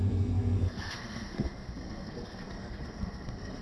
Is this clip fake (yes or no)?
yes